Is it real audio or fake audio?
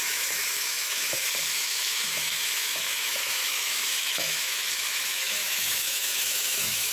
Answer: fake